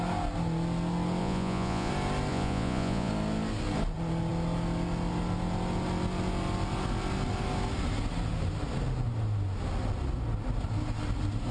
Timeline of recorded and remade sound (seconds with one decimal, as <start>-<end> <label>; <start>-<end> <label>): 0.0-1.2 recorded; 1.2-1.9 remade; 1.9-2.3 recorded; 2.3-3.1 remade; 3.1-11.5 recorded